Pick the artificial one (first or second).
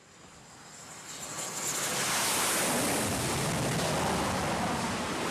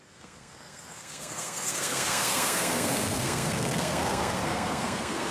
second